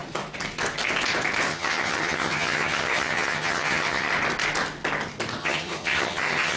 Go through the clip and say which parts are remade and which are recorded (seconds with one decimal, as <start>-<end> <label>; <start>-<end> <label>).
0.0-1.5 recorded; 1.5-4.1 remade; 4.1-5.4 recorded; 5.4-6.6 remade